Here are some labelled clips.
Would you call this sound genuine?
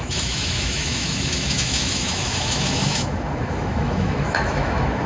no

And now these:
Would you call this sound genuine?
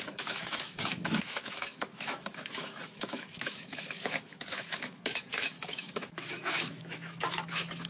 no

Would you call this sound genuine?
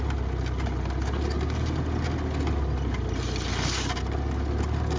yes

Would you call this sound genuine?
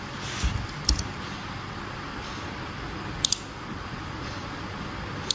yes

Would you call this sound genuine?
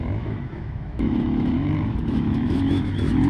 no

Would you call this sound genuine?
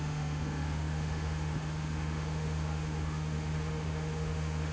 no